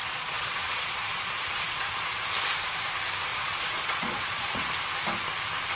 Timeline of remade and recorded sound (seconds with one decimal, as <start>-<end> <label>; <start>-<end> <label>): 0.0-2.3 remade; 2.3-3.3 recorded; 3.3-4.7 remade; 4.7-5.8 recorded